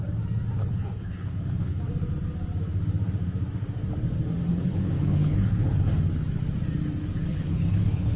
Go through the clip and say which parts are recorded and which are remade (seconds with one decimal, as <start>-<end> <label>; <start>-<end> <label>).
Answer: 0.0-0.6 recorded; 0.6-1.8 remade; 1.8-4.5 recorded; 4.5-5.9 remade; 5.9-7.3 recorded; 7.3-8.2 remade